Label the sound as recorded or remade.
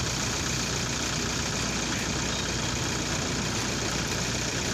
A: recorded